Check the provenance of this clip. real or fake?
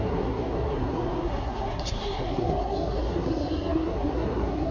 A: fake